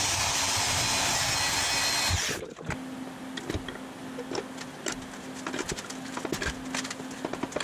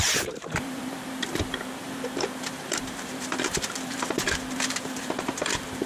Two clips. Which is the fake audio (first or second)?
second